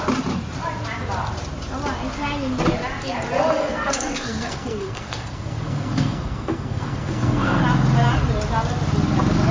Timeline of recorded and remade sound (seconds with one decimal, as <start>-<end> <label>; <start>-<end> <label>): 0.0-3.6 recorded; 3.6-7.6 remade; 7.6-9.5 recorded